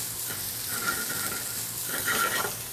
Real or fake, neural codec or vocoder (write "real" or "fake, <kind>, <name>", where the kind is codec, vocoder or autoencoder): real